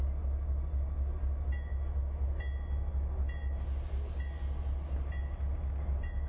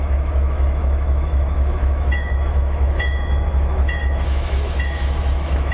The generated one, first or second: second